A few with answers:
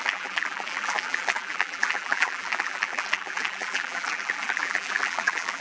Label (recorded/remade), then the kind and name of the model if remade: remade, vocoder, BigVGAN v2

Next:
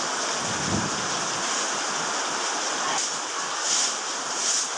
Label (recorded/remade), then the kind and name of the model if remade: recorded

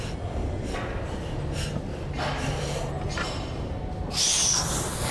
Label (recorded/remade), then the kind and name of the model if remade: recorded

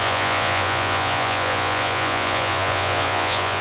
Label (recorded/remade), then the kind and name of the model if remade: remade, vocoder, Vocos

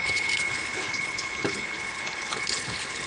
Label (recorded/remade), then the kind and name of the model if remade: remade, codec, HILCodec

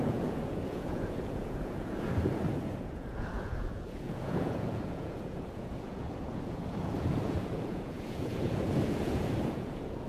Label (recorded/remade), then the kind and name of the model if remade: remade, vocoder, Vocos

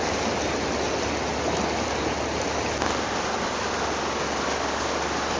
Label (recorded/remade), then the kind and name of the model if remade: recorded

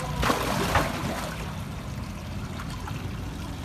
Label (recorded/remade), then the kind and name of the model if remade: recorded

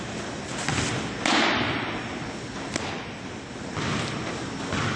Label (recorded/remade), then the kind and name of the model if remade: recorded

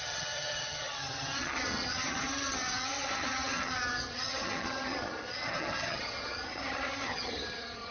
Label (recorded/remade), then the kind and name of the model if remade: remade, vocoder, HiFi-GAN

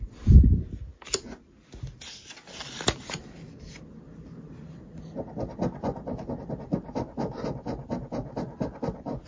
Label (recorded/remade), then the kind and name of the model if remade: recorded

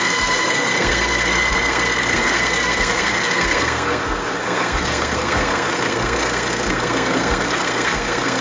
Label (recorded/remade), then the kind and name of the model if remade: remade, codec, SNAC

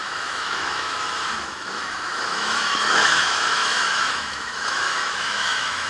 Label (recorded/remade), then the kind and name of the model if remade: remade, autoencoder, DAC-VAE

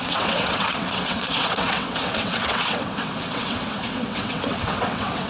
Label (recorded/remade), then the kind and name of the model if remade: remade, vocoder, WaveNeXt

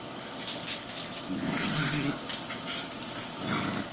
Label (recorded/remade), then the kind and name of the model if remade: recorded